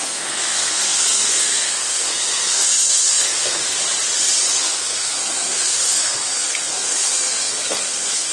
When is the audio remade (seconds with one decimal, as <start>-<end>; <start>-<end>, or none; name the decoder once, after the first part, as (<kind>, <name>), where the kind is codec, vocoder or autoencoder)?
0.0-3.6 (codec, SNAC); 4.5-8.3